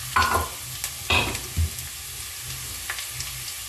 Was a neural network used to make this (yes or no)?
no